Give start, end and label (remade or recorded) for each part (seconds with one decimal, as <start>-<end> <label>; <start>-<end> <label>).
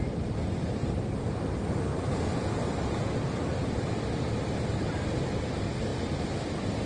0.0-6.9 recorded